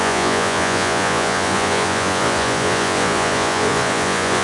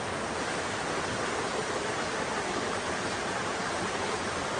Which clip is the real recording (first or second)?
second